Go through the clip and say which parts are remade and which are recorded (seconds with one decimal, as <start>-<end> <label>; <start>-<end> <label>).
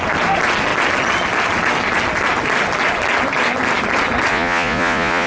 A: 0.0-4.3 recorded; 4.3-5.3 remade